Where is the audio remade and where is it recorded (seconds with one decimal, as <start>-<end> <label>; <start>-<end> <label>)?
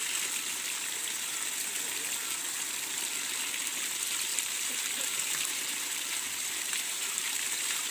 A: 0.0-4.3 recorded; 4.3-7.9 remade